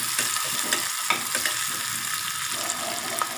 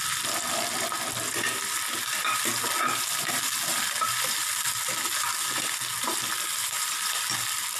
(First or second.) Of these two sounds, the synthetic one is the second